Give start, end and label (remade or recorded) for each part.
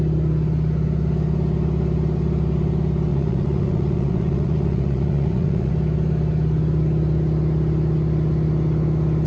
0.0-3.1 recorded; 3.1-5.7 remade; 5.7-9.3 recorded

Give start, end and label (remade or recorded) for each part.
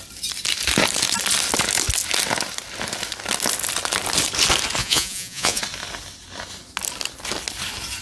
0.0-4.8 recorded; 4.8-5.6 remade; 5.6-8.0 recorded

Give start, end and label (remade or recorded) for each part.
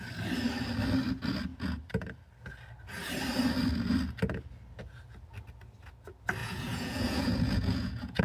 0.0-6.4 recorded; 6.4-8.2 remade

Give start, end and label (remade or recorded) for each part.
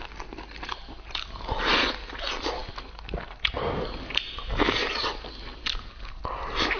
0.0-6.8 recorded